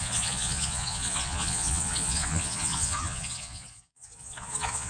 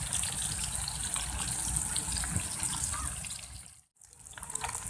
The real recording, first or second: second